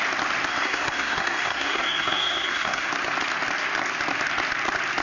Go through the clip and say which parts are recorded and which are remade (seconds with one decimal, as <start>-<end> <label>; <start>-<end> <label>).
0.0-0.5 recorded; 0.5-2.9 remade; 2.9-5.0 recorded